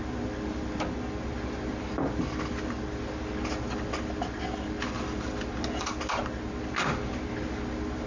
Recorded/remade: recorded